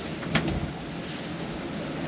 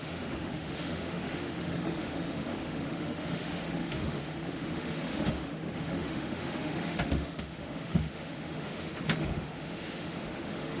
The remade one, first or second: second